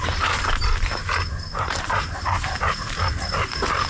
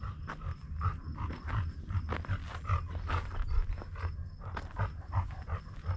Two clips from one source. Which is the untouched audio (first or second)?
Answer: second